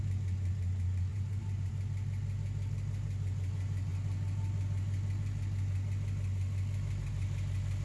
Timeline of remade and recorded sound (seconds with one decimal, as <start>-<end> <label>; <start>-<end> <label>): 0.0-1.1 recorded; 1.1-1.7 remade; 1.7-7.8 recorded